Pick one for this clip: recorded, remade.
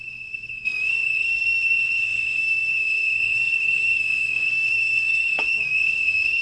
remade